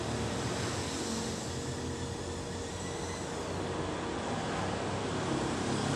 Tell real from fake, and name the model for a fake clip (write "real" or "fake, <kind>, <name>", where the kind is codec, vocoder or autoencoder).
real